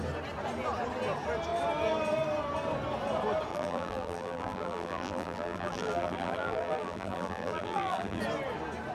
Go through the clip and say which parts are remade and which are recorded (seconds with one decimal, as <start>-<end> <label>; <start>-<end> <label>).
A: 0.0-3.5 recorded; 3.5-8.2 remade; 8.2-8.9 recorded